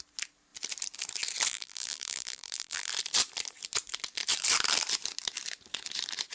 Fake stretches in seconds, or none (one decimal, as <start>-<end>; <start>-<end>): 1.5-2.9